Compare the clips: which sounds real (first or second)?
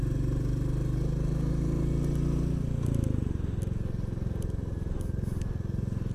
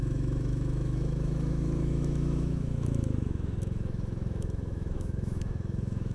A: first